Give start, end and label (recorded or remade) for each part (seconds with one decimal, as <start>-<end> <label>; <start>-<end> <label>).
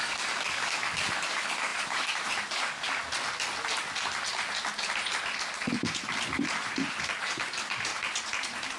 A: 0.0-3.0 remade; 3.0-7.2 recorded; 7.2-7.9 remade; 7.9-8.8 recorded